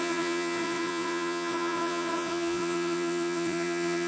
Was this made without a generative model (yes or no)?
no